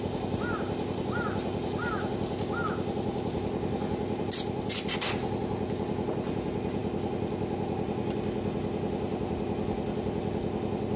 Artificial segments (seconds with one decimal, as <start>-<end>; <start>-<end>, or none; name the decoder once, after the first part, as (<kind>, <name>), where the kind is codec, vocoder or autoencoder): none